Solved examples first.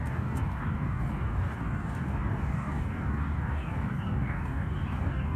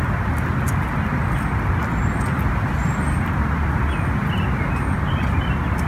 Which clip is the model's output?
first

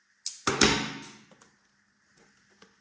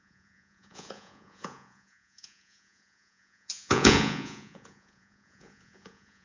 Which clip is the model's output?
second